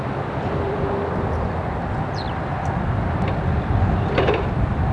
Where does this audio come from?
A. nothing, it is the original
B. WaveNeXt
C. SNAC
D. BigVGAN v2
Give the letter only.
D